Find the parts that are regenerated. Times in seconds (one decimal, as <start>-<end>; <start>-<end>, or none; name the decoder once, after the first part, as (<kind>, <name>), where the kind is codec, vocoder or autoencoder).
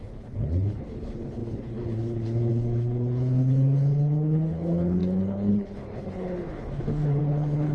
0.0-7.7 (codec, HILCodec)